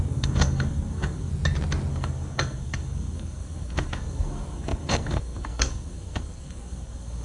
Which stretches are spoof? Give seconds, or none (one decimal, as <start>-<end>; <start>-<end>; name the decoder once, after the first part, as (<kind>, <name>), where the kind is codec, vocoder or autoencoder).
0.0-1.3 (codec, SNAC); 1.9-7.2

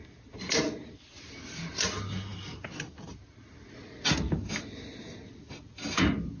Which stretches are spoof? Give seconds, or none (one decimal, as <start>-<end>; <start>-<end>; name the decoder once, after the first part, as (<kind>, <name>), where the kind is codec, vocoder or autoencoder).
none

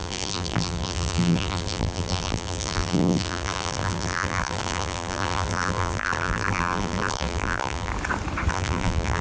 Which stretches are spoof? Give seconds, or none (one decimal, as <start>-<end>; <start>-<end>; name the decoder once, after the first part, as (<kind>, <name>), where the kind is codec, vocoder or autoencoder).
0.0-7.9 (vocoder, BigVGAN v2); 8.5-9.2

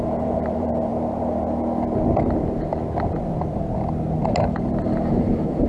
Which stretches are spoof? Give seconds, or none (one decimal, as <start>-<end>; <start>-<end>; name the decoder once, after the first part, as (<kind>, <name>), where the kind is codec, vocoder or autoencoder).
0.0-0.9 (vocoder, BigVGAN v2); 4.3-5.7

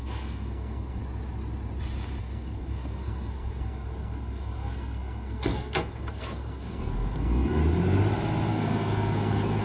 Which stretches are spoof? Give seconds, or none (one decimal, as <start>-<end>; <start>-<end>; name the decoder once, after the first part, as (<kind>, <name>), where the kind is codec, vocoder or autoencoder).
0.0-1.0 (codec, SNAC); 2.2-7.6; 8.5-9.6

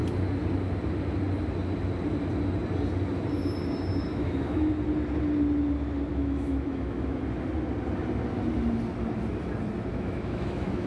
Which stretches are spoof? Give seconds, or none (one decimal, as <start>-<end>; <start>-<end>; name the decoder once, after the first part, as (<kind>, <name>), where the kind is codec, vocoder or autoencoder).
4.1-4.7 (autoencoder, DAC-VAE); 6.1-7.2; 9.9-10.9

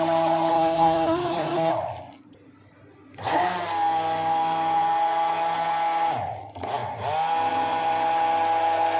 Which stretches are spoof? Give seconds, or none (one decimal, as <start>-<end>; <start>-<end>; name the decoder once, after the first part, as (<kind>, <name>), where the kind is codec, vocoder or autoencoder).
0.5-1.7 (codec, SNAC)